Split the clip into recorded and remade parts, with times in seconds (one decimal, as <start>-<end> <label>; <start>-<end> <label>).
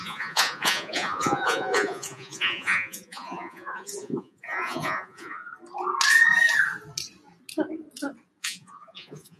0.0-5.5 remade; 5.5-8.4 recorded; 8.4-9.4 remade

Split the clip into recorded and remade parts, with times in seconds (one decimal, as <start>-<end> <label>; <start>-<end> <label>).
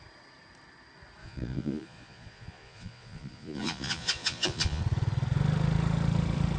0.0-1.2 recorded; 1.2-4.8 remade; 4.8-6.6 recorded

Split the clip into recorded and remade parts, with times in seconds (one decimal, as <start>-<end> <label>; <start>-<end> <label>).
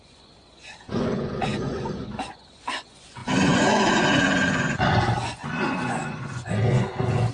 0.0-7.3 remade